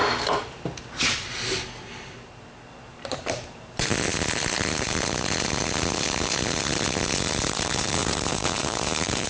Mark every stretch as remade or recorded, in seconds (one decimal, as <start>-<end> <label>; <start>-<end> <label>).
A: 0.0-2.7 recorded; 2.7-3.9 remade; 3.9-7.4 recorded; 7.4-9.3 remade